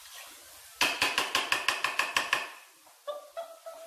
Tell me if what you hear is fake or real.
real